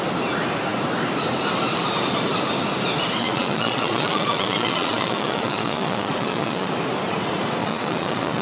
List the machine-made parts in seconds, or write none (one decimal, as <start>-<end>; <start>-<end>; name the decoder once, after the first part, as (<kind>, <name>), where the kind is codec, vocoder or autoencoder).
3.2-6.7 (vocoder, Vocos); 7.6-8.4